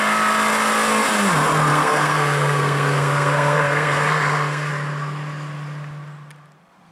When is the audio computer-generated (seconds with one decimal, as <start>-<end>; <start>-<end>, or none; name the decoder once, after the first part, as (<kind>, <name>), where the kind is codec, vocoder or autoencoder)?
1.7-4.7 (codec, SNAC)